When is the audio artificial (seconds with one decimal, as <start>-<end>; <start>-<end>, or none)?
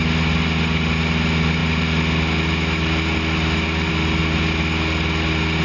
none